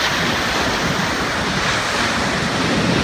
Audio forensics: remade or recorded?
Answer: recorded